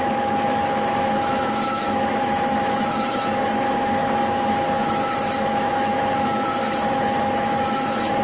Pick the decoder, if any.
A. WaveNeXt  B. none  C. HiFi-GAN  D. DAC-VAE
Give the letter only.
D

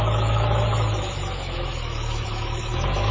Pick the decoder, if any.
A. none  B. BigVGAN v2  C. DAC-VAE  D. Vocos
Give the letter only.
C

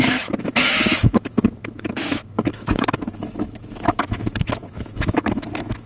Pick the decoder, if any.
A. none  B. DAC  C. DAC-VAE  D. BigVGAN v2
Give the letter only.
C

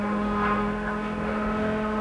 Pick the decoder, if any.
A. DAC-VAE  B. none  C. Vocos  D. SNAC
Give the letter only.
A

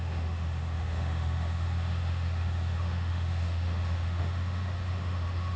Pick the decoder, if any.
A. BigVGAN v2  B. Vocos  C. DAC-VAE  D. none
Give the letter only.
C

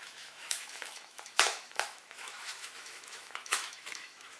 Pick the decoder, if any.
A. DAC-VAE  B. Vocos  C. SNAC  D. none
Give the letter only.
A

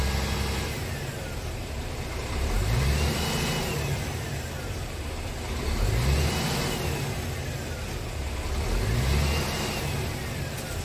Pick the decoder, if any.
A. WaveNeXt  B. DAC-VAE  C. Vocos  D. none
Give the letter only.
D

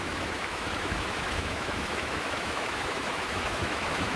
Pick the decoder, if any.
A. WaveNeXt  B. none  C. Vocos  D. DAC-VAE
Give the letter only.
D